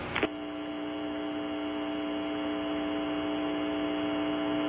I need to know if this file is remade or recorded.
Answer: recorded